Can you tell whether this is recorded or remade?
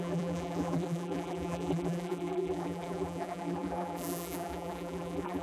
remade